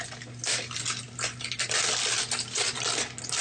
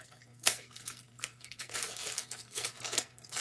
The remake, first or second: second